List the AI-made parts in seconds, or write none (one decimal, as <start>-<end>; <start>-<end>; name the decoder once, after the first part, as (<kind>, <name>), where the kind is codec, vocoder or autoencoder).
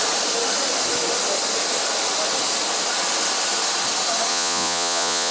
4.3-5.3 (vocoder, Vocos)